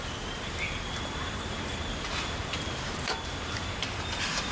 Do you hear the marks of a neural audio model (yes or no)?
yes